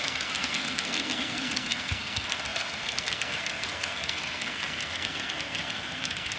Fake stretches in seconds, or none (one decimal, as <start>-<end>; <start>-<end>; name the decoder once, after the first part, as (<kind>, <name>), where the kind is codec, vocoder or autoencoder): 0.0-6.4 (codec, SNAC)